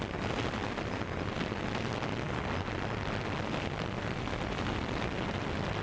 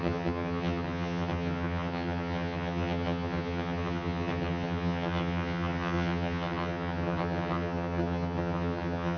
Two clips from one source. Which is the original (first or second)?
first